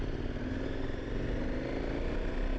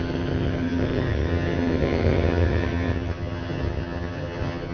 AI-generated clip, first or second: second